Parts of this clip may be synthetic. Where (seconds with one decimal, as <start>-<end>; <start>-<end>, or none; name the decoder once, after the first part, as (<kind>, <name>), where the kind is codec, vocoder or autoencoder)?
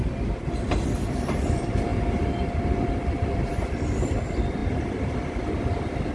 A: 0.0-1.9 (vocoder, BigVGAN v2); 2.6-6.1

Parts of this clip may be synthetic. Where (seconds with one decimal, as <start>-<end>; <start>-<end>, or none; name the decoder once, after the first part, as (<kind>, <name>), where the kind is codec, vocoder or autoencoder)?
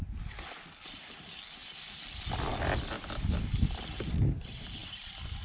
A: none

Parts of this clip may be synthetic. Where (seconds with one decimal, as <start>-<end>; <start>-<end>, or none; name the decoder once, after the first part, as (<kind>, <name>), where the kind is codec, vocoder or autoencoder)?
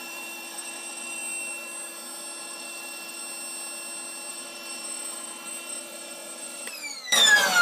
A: 0.0-1.2 (vocoder, BigVGAN v2); 2.4-3.2; 4.3-7.6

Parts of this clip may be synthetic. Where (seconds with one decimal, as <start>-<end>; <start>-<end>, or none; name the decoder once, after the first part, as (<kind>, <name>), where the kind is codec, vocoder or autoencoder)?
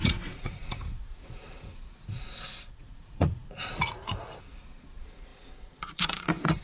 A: 0.0-6.6 (vocoder, Vocos)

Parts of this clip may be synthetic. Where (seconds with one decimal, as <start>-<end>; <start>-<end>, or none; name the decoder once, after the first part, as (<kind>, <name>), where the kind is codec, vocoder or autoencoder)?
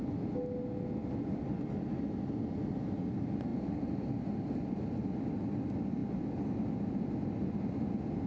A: none